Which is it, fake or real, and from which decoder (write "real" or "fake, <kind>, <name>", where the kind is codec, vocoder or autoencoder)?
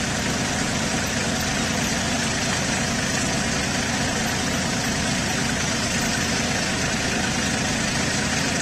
real